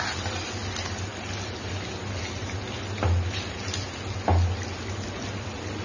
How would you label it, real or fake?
real